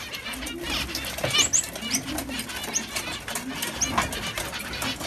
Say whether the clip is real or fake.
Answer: real